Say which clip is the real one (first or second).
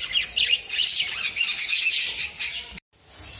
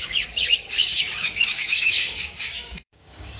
first